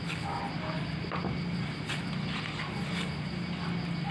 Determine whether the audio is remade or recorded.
recorded